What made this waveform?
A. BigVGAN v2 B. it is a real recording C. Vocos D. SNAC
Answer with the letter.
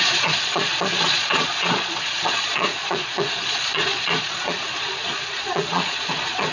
C